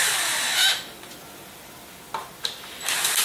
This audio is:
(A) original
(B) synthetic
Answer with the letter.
A